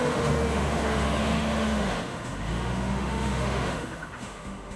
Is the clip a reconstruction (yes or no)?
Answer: yes